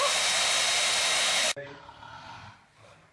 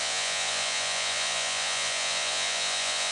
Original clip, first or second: first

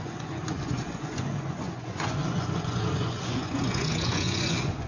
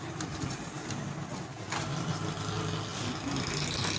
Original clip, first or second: second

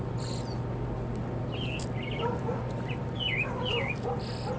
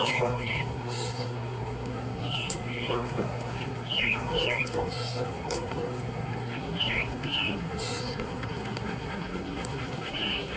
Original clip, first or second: first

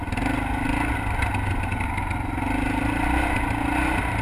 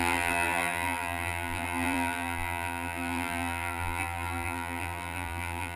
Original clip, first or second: first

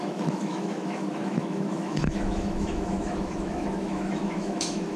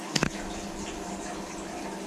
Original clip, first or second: second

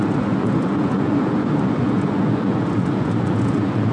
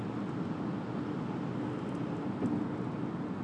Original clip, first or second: second